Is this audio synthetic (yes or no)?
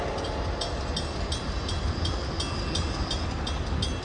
no